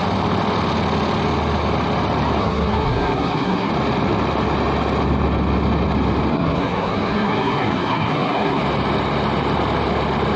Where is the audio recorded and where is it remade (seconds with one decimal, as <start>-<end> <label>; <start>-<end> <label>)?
0.0-2.4 recorded; 2.4-3.7 remade; 3.7-6.3 recorded; 6.3-8.6 remade; 8.6-10.4 recorded